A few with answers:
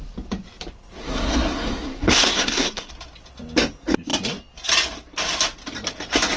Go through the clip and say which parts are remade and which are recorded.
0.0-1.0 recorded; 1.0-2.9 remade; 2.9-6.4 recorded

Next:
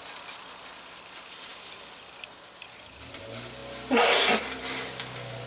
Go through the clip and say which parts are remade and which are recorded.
0.0-5.5 recorded

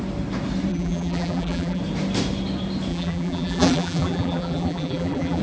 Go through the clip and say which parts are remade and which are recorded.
0.0-0.7 recorded; 0.7-1.8 remade; 1.8-2.9 recorded; 2.9-5.4 remade

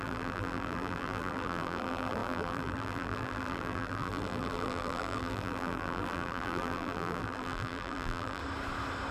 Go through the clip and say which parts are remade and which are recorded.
0.0-8.4 remade; 8.4-9.1 recorded

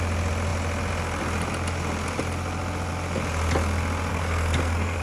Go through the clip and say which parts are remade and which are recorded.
0.0-4.1 recorded; 4.1-5.0 remade

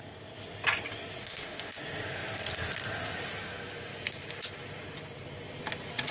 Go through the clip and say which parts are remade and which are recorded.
0.0-1.2 recorded; 1.2-1.7 remade; 1.7-6.1 recorded

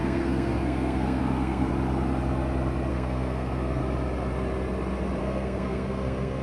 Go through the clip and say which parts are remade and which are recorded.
0.0-1.7 remade; 1.7-2.9 recorded; 2.9-3.8 remade; 3.8-5.2 recorded; 5.2-6.4 remade